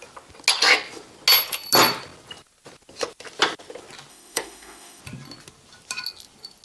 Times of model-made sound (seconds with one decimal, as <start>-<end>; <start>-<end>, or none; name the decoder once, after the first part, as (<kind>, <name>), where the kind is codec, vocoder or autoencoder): 4.1-5.0 (autoencoder, DAC-VAE)